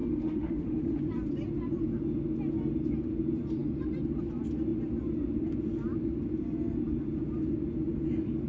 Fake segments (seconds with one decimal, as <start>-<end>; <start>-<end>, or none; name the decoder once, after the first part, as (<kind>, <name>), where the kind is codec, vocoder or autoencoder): 0.0-1.0 (autoencoder, DAC-VAE)